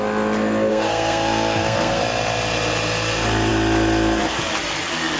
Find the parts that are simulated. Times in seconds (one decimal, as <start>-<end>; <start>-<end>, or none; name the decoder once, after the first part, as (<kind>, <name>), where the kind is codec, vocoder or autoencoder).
0.7-2.0 (codec, SNAC)